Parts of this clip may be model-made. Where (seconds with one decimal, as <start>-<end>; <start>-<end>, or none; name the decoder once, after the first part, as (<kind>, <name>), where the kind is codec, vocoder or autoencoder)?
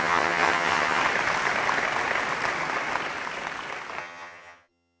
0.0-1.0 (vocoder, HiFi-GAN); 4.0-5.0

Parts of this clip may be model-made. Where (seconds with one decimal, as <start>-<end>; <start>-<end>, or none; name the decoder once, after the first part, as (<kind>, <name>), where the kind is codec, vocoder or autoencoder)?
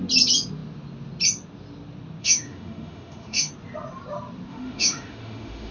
2.2-3.5 (autoencoder, DAC-VAE); 4.5-5.7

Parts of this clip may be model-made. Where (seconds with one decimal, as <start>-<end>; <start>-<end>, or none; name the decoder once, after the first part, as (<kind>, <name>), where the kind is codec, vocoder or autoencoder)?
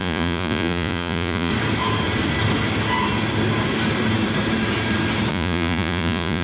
0.0-1.5 (vocoder, Vocos); 5.3-6.4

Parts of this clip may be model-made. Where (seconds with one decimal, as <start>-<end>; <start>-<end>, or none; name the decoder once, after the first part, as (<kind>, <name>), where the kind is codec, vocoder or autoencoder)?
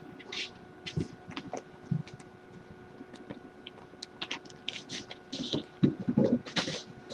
none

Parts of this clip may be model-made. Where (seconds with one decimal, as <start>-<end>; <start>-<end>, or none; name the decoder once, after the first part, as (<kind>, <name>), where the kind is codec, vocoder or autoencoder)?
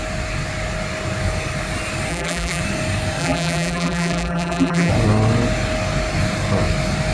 2.1-2.6 (vocoder, BigVGAN v2); 3.2-4.9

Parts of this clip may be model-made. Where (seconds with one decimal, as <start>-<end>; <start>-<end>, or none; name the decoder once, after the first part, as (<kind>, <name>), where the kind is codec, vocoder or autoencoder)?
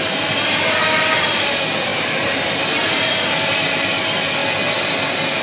0.0-4.4 (vocoder, BigVGAN v2)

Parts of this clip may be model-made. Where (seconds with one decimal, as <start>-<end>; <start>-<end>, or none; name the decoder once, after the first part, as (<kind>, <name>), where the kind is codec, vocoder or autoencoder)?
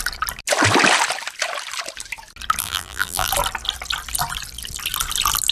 2.6-3.3 (vocoder, BigVGAN v2)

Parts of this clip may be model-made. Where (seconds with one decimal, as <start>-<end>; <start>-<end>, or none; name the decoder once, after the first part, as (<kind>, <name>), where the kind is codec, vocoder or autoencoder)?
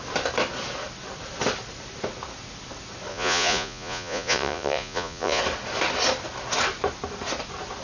3.1-5.4 (vocoder, Vocos)